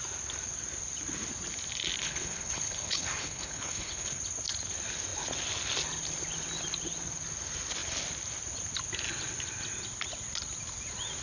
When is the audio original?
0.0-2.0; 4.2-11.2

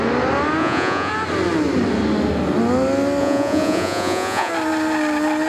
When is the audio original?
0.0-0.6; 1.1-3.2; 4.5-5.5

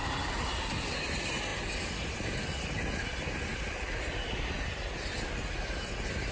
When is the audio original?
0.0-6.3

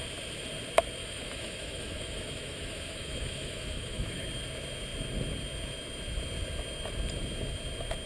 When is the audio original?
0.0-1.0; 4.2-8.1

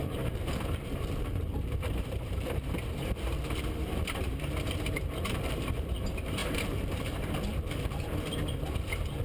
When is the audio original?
none

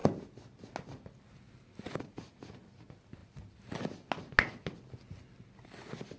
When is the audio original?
0.0-6.2

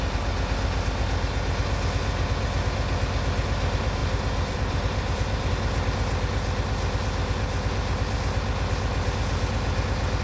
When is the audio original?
0.0-4.0; 5.5-10.2

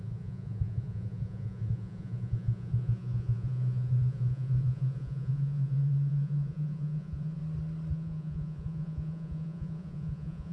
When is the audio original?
7.4-7.9